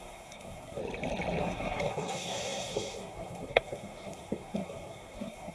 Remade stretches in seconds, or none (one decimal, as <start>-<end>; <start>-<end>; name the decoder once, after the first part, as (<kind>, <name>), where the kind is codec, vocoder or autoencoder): 0.0-0.8 (codec, SNAC); 1.4-5.5